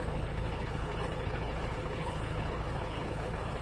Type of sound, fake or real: fake